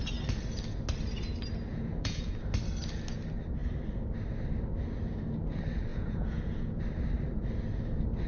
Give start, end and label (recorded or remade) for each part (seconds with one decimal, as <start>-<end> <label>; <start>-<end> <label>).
0.0-1.7 recorded; 1.7-2.3 remade; 2.3-5.9 recorded; 5.9-6.8 remade; 6.8-8.3 recorded

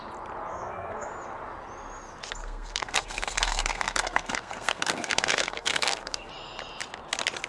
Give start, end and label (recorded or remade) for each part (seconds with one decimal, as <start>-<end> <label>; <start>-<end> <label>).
0.0-0.5 recorded; 0.5-1.1 remade; 1.1-2.4 recorded; 2.4-6.3 remade; 6.3-7.5 recorded

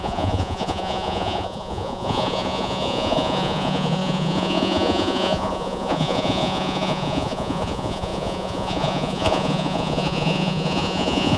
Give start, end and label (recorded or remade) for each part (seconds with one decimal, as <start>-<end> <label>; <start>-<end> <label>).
0.0-11.4 remade

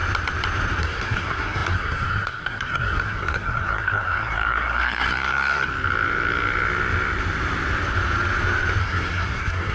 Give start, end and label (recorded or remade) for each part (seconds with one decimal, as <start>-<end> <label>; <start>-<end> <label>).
0.0-0.8 recorded; 0.8-5.7 remade; 5.7-8.8 recorded; 8.8-9.7 remade

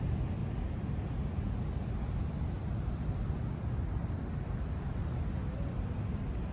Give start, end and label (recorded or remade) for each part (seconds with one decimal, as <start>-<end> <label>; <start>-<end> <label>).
0.0-0.4 remade; 0.4-3.9 recorded; 3.9-5.4 remade; 5.4-6.1 recorded; 6.1-6.5 remade

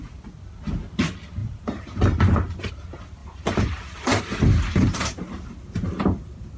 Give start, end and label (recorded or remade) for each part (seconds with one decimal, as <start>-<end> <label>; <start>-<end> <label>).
0.0-1.4 recorded; 1.4-2.7 remade; 2.7-3.2 recorded; 3.2-4.2 remade; 4.2-4.7 recorded; 4.7-6.6 remade